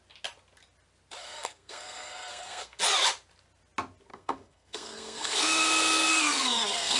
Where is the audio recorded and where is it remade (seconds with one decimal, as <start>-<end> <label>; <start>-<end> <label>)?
0.0-1.2 recorded; 1.2-2.8 remade; 2.8-4.1 recorded; 4.1-7.0 remade

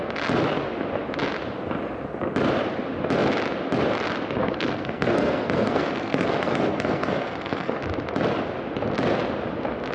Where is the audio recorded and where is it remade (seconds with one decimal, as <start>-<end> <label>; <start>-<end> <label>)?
0.0-4.4 recorded; 4.4-7.8 remade; 7.8-9.9 recorded

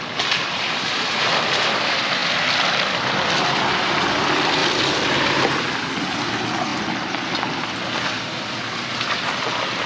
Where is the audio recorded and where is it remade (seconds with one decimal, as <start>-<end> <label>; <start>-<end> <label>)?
0.0-4.6 recorded; 4.6-6.3 remade; 6.3-9.9 recorded